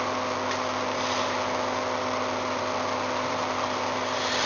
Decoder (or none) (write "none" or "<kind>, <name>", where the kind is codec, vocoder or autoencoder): none